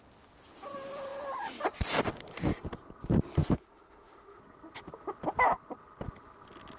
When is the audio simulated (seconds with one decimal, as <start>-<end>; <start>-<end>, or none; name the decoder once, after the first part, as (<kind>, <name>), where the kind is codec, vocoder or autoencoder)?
3.4-4.4 (autoencoder, DAC-VAE)